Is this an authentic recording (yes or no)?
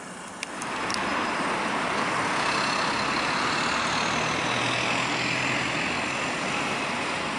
yes